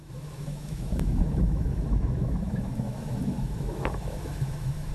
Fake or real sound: fake